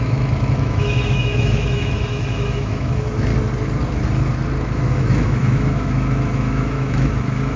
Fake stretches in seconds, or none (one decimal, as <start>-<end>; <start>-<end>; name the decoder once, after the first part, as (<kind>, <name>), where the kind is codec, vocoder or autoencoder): 0.0-3.3 (autoencoder, DAC-VAE); 4.6-7.6